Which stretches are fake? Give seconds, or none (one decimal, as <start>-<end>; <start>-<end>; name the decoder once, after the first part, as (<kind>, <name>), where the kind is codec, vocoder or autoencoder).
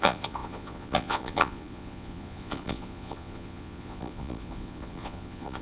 0.0-5.6 (vocoder, Vocos)